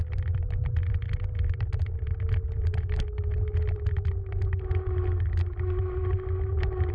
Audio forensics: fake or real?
real